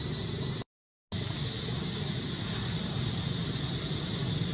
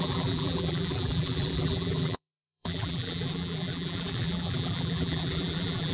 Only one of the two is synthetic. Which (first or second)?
second